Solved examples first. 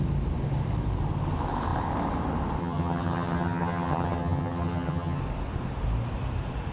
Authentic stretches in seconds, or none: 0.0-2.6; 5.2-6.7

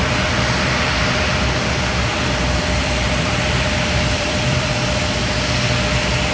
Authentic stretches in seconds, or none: 0.0-2.8; 4.7-6.3